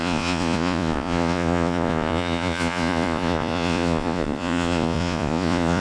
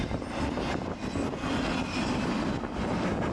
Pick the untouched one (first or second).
second